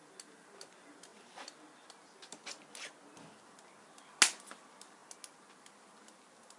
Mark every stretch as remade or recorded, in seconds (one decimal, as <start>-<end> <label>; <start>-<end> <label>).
0.0-6.6 recorded